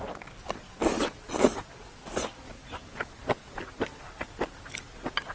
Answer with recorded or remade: recorded